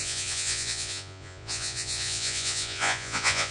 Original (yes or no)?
no